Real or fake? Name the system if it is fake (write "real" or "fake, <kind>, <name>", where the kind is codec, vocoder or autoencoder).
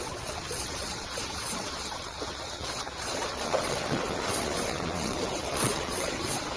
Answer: fake, vocoder, WaveNeXt